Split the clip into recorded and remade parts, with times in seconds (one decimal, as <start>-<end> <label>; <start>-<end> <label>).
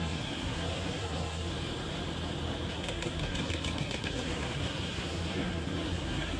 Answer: 0.0-1.5 remade; 1.5-2.7 recorded; 2.7-6.4 remade